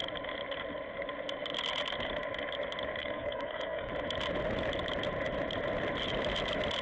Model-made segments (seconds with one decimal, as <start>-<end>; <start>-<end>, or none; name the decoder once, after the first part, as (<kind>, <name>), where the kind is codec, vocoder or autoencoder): 3.0-3.9 (codec, SNAC)